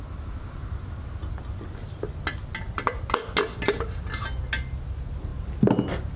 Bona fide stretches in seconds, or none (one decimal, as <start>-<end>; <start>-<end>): 0.0-6.2